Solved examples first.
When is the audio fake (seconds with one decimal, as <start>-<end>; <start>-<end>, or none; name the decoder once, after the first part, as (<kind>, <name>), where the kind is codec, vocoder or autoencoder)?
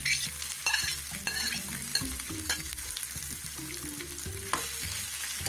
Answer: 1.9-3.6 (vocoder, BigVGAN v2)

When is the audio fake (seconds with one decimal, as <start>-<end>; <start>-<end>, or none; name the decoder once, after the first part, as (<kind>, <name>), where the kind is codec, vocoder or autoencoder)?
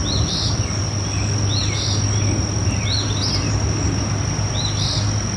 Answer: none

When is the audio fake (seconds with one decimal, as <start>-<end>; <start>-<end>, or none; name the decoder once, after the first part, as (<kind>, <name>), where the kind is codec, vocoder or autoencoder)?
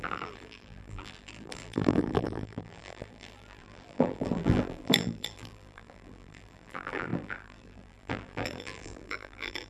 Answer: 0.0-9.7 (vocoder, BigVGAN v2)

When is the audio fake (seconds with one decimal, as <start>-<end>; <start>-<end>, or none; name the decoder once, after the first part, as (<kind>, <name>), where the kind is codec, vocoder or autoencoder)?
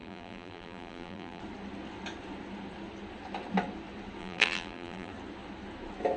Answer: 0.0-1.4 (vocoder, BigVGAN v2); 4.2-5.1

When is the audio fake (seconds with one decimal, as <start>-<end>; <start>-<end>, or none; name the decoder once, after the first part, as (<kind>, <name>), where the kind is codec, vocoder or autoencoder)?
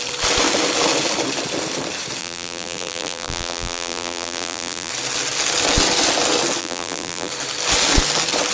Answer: 2.2-4.9 (vocoder, BigVGAN v2); 6.6-7.3